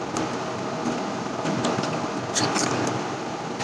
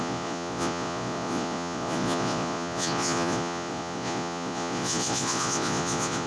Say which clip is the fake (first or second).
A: second